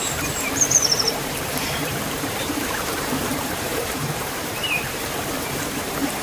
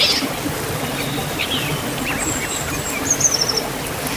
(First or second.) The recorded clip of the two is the second